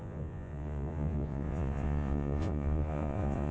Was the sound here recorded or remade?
remade